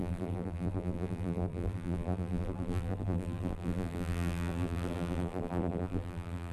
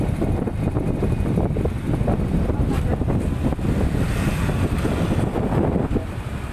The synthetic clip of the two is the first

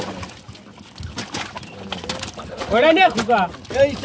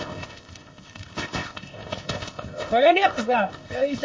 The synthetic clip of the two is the second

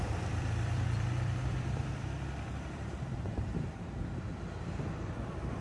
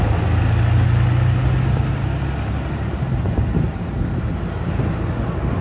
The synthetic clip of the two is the first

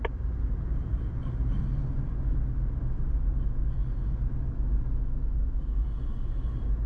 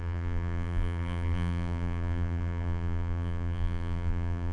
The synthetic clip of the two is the second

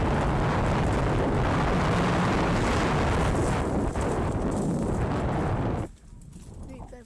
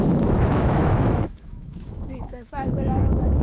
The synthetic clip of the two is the second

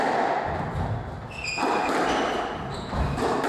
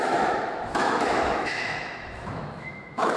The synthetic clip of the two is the second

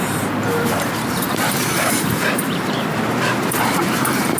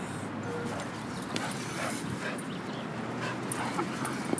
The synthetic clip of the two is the first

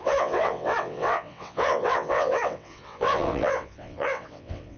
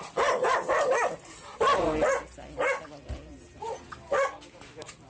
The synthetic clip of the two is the first